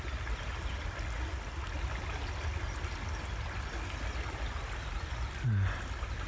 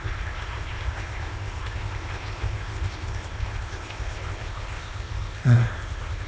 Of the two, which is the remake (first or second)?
second